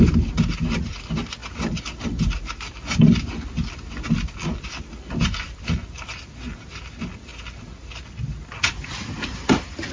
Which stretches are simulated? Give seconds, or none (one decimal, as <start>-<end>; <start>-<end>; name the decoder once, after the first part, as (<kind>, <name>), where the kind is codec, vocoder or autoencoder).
none